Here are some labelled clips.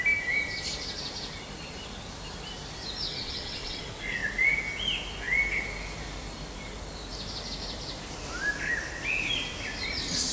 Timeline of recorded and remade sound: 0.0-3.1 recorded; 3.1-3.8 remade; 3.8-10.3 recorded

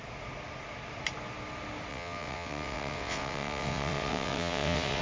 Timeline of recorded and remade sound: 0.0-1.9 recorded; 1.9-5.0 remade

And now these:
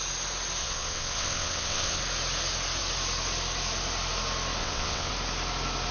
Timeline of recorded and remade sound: 0.0-0.6 recorded; 0.6-2.0 remade; 2.0-4.6 recorded; 4.6-5.1 remade; 5.1-5.9 recorded